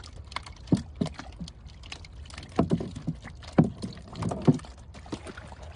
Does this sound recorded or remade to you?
recorded